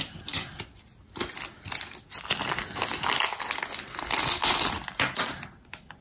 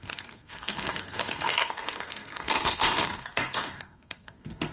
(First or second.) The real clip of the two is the first